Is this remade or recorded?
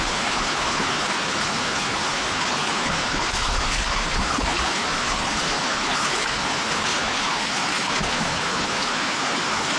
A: remade